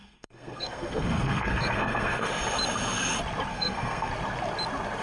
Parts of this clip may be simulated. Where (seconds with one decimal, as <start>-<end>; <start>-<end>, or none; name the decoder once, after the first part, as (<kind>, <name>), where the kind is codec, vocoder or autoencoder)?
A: 0.0-2.3 (codec, SNAC); 3.5-4.1